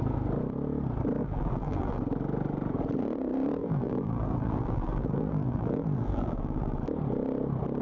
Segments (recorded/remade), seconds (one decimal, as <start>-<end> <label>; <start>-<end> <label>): 0.0-1.2 recorded; 1.2-2.0 remade; 2.0-3.6 recorded; 3.6-6.8 remade; 6.8-7.8 recorded